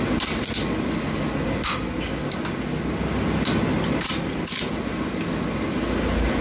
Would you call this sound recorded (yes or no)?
yes